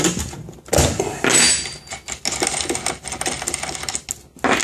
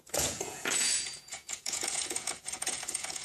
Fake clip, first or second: second